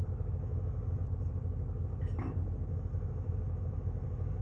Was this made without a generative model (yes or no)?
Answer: no